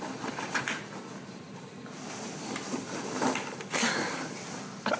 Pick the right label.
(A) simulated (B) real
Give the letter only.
B